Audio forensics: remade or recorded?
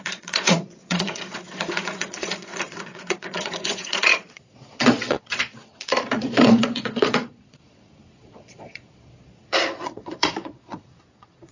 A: remade